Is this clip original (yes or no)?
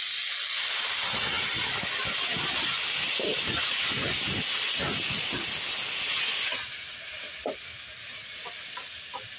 yes